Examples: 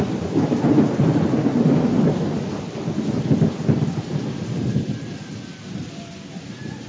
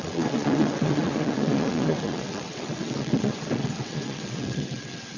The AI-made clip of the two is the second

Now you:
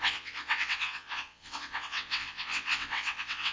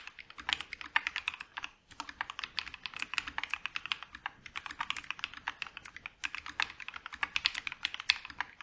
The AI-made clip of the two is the first